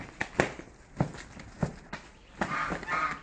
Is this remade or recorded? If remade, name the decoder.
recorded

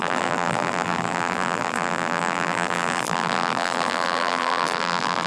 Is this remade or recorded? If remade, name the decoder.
remade, vocoder, BigVGAN v2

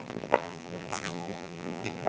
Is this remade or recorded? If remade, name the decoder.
remade, vocoder, BigVGAN v2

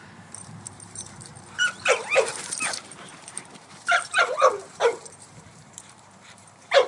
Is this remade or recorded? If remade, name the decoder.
remade, vocoder, BigVGAN v2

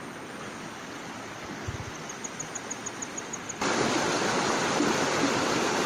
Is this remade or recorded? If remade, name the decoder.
recorded